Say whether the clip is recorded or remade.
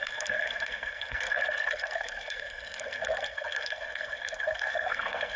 remade